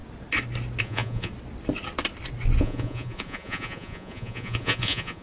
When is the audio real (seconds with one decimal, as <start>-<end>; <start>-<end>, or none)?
0.0-0.8; 1.3-2.6